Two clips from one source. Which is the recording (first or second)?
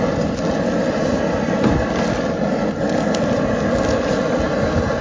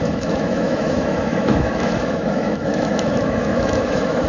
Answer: first